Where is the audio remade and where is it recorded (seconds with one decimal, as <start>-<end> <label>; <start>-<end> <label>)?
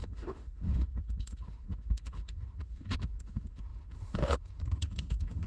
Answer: 0.0-5.5 remade